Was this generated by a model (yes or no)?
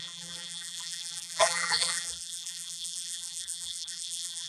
yes